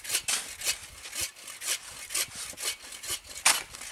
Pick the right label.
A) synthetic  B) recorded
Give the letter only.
B